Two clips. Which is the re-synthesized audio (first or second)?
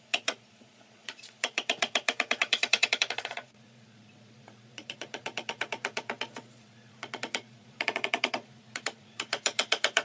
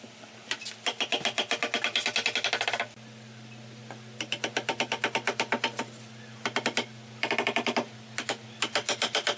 first